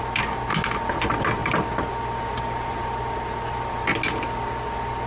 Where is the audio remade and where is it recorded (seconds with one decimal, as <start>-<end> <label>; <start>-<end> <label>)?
0.0-5.1 recorded